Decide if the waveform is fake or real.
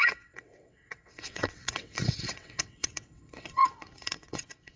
fake